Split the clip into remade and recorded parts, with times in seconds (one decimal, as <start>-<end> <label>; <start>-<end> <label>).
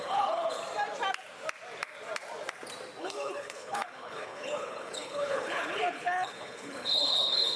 0.0-0.6 remade; 0.6-3.0 recorded; 3.0-7.6 remade